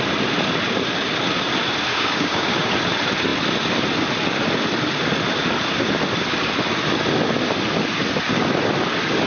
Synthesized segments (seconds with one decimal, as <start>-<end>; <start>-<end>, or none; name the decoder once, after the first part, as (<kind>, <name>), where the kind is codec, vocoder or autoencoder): 1.9-2.7 (codec, DAC)